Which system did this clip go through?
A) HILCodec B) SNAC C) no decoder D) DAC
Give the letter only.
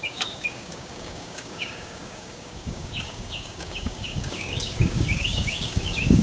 D